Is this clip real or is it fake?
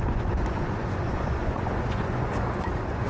fake